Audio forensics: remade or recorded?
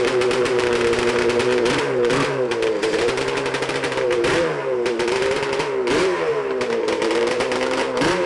remade